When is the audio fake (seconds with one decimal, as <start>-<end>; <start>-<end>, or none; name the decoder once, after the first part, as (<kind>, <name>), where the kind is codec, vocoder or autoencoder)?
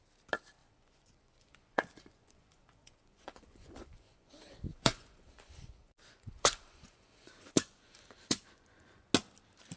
0.6-4.3 (vocoder, Vocos); 4.7-9.1